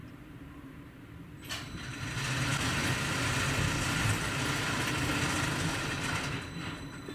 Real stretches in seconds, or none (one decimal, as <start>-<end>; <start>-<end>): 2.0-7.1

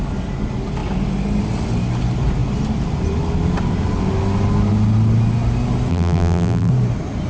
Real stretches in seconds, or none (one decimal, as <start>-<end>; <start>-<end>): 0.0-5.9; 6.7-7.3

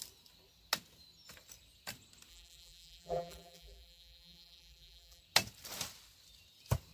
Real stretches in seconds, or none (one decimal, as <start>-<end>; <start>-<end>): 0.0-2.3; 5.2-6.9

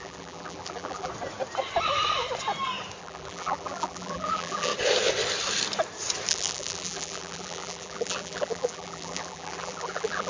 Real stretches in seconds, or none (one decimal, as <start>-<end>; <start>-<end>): 1.1-3.0; 4.7-6.3

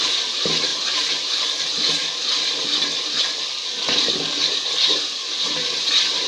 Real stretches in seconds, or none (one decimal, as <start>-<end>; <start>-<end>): 0.7-4.5